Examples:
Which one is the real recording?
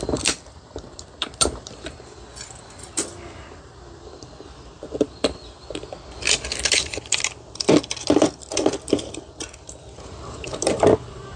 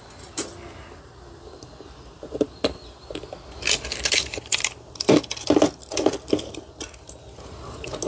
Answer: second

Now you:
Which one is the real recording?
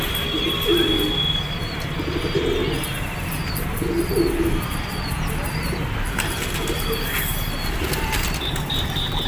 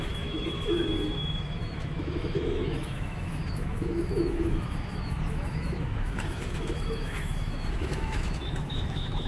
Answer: first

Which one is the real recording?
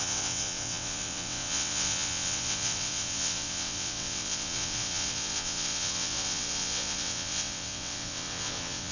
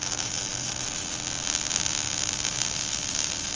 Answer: second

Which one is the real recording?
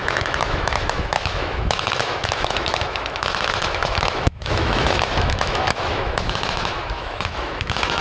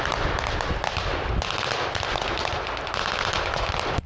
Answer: second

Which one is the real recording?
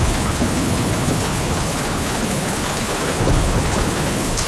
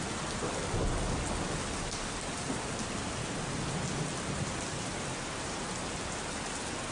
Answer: second